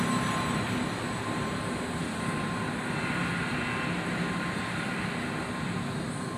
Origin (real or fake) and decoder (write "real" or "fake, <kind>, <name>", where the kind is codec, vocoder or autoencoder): real